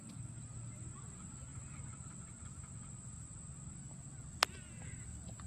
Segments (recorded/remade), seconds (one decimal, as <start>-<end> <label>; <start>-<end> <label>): 0.0-5.5 recorded